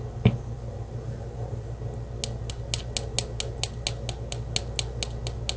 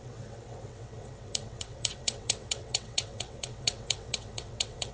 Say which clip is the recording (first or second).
first